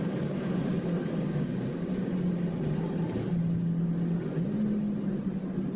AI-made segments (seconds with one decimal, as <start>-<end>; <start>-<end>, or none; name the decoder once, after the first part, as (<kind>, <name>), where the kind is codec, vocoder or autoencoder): 0.0-2.1 (codec, DAC)